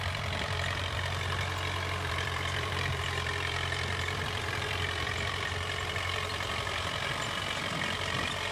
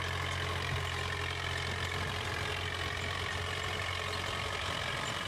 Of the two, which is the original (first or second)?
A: second